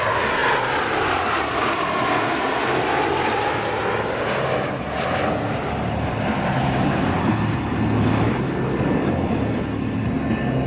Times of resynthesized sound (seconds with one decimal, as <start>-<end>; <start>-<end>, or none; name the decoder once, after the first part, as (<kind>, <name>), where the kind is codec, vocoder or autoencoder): none